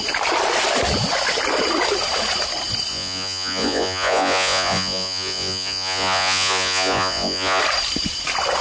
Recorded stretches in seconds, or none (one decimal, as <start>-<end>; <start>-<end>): 0.0-2.9; 7.6-8.6